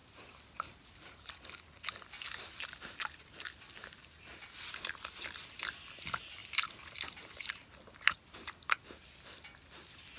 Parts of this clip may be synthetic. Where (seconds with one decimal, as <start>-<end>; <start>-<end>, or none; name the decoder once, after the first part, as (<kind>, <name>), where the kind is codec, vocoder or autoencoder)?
0.0-1.3 (vocoder, BigVGAN v2); 6.4-7.4